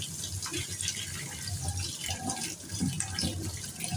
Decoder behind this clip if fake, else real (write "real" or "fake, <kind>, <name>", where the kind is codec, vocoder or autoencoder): real